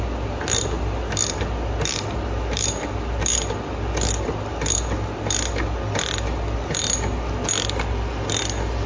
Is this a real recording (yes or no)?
yes